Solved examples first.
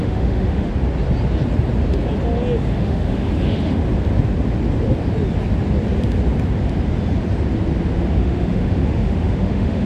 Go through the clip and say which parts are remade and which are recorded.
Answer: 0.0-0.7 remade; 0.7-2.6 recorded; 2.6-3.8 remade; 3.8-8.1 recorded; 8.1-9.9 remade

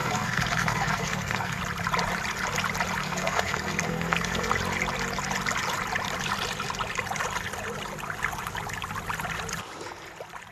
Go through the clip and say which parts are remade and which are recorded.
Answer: 0.0-1.6 remade; 1.6-3.0 recorded; 3.0-4.5 remade; 4.5-10.5 recorded